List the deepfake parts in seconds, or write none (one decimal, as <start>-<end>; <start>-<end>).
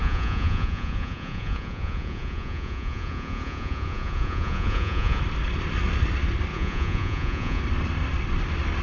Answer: 0.0-5.2; 6.5-7.6